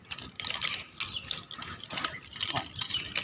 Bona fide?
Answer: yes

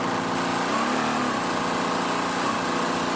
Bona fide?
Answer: yes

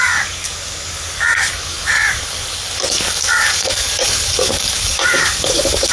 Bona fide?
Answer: no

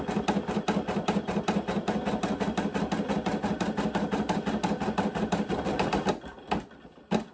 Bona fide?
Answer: yes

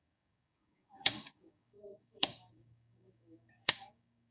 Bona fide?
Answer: no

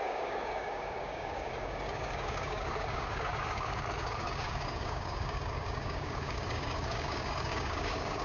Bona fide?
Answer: no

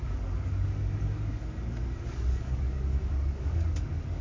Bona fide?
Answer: no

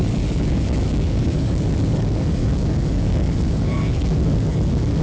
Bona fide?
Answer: no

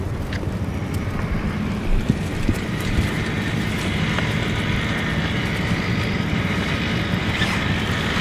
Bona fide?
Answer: yes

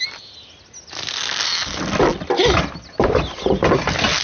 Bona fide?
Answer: yes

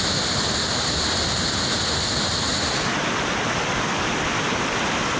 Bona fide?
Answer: yes